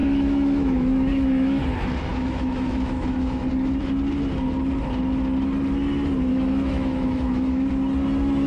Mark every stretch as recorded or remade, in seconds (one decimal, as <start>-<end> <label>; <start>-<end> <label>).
0.0-1.6 remade; 1.6-2.1 recorded; 2.1-3.4 remade; 3.4-6.3 recorded; 6.3-7.7 remade; 7.7-8.5 recorded